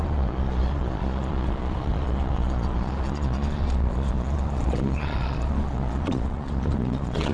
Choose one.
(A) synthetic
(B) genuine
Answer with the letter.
A